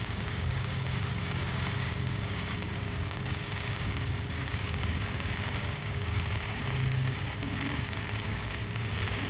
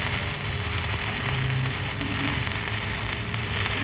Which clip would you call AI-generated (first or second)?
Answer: first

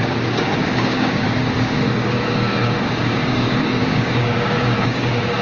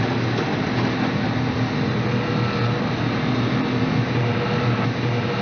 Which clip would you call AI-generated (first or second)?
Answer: first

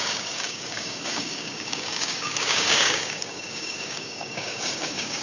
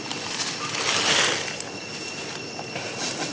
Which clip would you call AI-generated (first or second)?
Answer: first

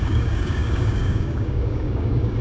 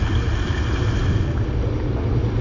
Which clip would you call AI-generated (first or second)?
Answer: first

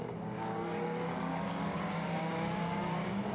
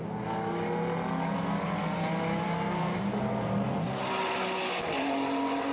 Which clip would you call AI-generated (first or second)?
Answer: first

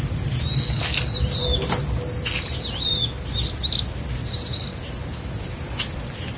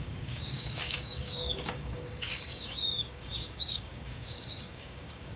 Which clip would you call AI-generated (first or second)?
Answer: second